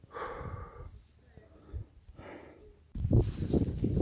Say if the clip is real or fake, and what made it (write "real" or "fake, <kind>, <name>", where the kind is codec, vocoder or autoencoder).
real